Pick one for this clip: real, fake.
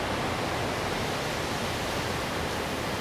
real